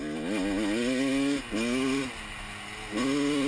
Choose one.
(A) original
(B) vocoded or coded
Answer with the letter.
A